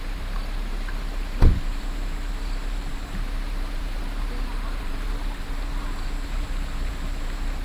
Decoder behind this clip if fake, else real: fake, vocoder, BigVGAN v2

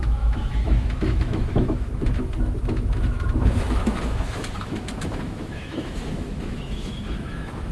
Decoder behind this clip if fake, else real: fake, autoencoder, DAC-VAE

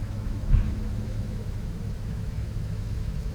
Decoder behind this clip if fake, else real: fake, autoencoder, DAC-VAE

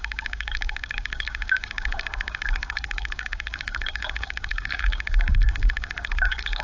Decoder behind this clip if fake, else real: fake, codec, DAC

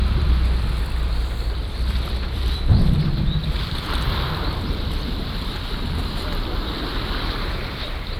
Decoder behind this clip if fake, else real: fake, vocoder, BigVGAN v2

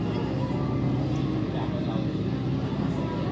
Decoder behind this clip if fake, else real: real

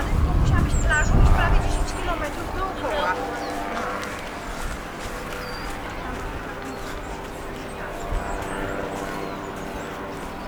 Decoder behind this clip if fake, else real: real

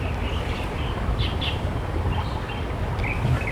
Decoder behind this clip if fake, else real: real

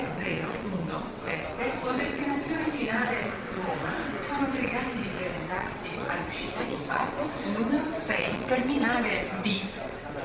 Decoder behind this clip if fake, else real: fake, vocoder, WaveNeXt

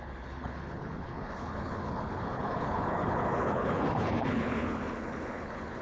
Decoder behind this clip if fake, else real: fake, codec, HILCodec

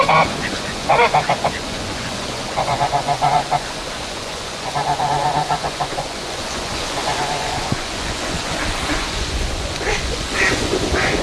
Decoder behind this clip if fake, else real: fake, vocoder, Vocos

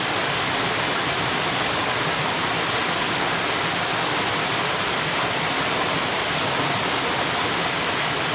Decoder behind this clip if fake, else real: real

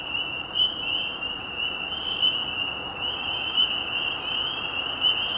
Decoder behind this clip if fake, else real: real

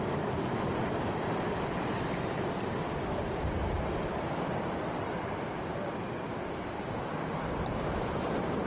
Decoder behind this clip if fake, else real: fake, vocoder, BigVGAN v2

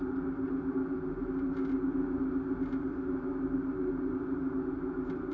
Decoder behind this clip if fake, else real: real